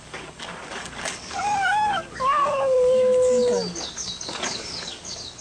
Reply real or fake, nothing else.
fake